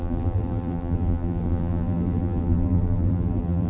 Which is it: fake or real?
fake